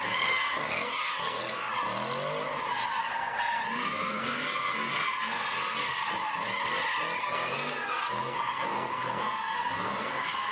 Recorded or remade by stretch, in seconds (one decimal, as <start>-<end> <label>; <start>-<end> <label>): 0.0-1.7 remade; 1.7-3.0 recorded; 3.0-6.1 remade; 6.1-7.2 recorded; 7.2-10.5 remade